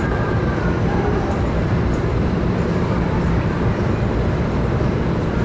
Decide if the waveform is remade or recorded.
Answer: remade